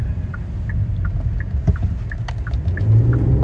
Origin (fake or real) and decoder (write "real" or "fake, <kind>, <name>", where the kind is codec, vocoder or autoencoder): real